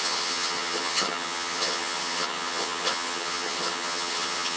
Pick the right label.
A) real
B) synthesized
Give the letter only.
B